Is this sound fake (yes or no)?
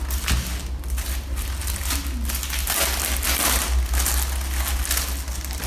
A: no